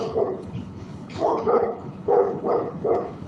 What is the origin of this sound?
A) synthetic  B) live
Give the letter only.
A